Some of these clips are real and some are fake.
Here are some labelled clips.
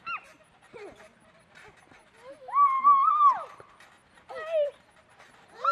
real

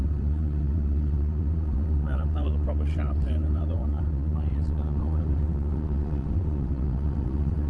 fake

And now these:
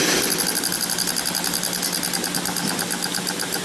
real